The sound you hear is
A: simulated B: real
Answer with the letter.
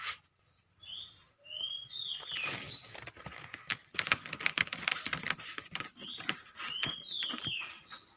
B